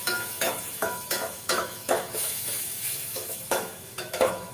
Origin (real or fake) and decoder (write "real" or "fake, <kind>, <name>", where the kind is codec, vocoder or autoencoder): fake, autoencoder, DAC-VAE